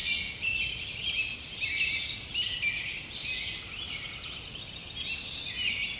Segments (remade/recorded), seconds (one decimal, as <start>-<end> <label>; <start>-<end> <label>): 0.0-6.0 recorded